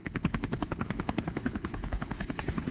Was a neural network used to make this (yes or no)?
yes